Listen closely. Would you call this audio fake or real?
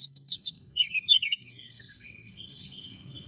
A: fake